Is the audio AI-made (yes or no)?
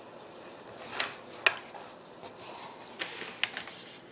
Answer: no